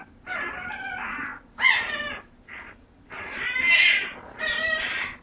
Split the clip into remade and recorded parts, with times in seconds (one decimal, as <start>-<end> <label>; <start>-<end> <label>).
0.0-5.2 recorded